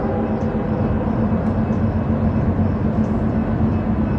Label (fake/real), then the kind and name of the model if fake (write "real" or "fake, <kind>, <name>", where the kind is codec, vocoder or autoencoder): real